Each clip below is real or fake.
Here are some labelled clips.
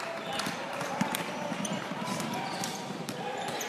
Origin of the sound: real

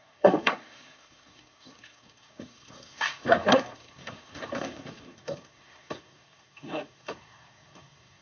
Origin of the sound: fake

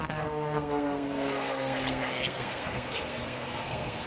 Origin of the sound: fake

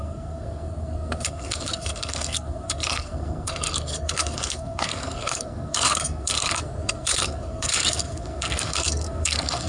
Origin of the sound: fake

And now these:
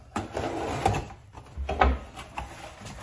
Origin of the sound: real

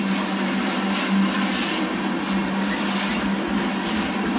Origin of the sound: real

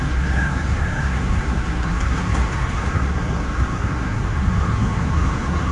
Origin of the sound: fake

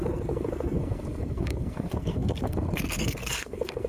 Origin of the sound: fake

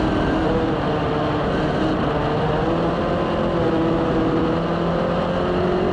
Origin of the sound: real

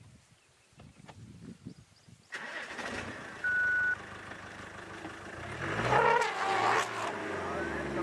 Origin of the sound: real